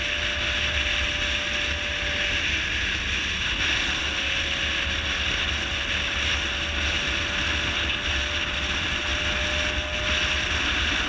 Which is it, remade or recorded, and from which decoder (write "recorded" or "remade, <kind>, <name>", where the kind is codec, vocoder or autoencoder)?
recorded